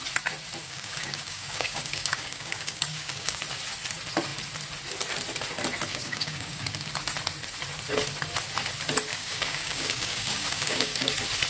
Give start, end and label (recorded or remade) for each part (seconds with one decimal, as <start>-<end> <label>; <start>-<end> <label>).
0.0-0.6 recorded; 0.6-3.4 remade; 3.4-5.9 recorded; 5.9-6.9 remade; 6.9-9.1 recorded; 9.1-11.1 remade; 11.1-11.5 recorded